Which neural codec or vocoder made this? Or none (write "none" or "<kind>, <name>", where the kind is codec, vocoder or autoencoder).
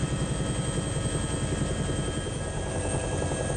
none